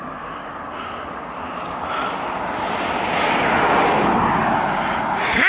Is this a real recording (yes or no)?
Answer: yes